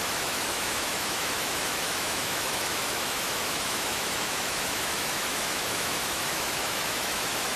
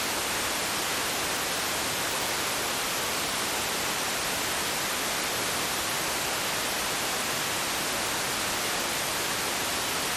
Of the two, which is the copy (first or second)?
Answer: first